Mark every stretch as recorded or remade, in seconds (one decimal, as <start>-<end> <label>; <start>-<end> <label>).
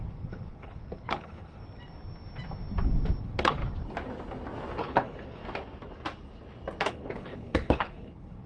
0.0-1.6 remade; 1.6-3.2 recorded; 3.2-3.6 remade; 3.6-4.8 recorded; 4.8-5.4 remade; 5.4-6.9 recorded; 6.9-8.5 remade